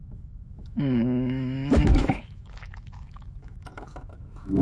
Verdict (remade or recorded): remade